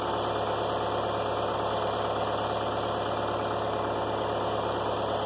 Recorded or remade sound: recorded